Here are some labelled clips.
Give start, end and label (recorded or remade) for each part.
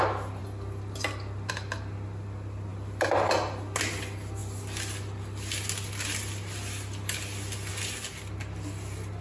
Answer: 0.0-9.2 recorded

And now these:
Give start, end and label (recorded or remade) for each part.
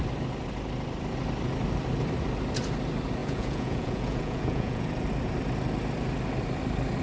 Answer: 0.0-3.2 recorded; 3.2-4.8 remade; 4.8-7.0 recorded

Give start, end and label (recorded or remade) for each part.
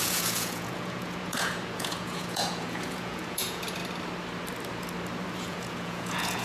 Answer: 0.0-3.8 remade; 3.8-5.4 recorded; 5.4-6.4 remade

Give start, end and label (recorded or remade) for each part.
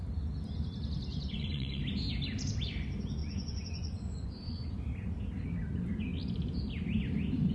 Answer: 0.0-1.1 recorded; 1.1-1.8 remade; 1.8-3.2 recorded; 3.2-4.7 remade; 4.7-7.5 recorded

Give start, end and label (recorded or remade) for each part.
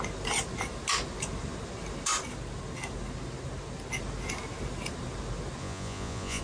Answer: 0.0-5.6 recorded; 5.6-6.4 remade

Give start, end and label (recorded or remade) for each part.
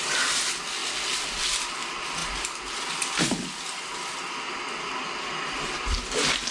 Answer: 0.0-6.5 recorded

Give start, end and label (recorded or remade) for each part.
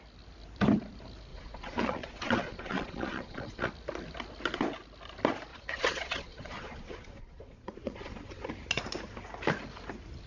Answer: 0.0-1.3 recorded; 1.3-3.7 remade; 3.7-5.5 recorded; 5.5-8.5 remade; 8.5-10.3 recorded